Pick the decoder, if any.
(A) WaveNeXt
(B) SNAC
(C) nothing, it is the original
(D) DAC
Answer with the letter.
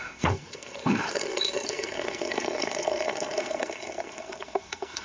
B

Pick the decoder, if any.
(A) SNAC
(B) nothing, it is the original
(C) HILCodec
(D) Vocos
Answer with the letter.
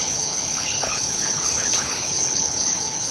C